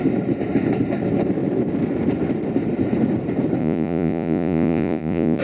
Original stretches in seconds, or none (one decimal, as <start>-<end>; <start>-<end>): 0.0-3.6